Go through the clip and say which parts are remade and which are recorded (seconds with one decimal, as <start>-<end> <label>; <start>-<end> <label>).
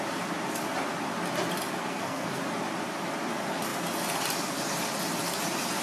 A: 0.0-1.8 recorded; 1.8-2.4 remade; 2.4-5.8 recorded